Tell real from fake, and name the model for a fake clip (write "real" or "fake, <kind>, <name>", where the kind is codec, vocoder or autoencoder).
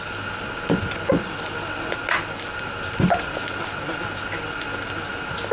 real